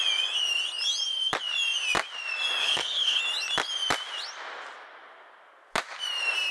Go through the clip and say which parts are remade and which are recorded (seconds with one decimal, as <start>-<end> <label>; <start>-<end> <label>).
0.0-2.6 recorded; 2.6-3.2 remade; 3.2-6.5 recorded